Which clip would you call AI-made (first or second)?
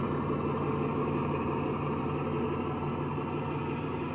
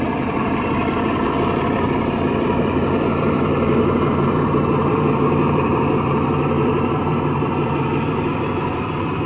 second